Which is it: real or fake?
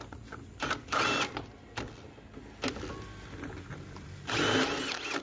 real